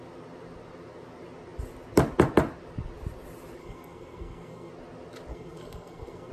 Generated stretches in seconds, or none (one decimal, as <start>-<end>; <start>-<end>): 3.6-4.7; 5.3-6.3